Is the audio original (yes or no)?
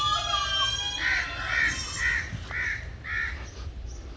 yes